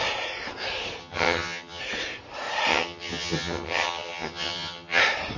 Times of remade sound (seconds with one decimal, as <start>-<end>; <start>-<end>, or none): 1.0-1.8; 2.7-5.0